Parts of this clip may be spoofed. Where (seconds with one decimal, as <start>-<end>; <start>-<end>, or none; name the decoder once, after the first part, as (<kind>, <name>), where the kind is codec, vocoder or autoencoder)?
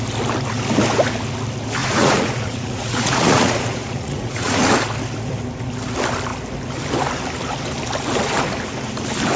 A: 1.8-4.7 (vocoder, Vocos)